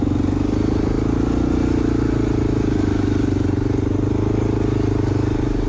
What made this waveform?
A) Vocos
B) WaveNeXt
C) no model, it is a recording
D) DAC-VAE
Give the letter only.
C